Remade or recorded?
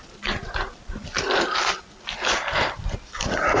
recorded